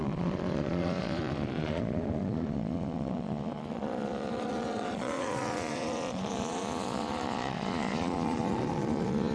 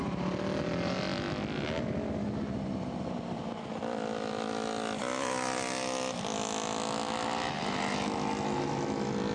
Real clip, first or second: second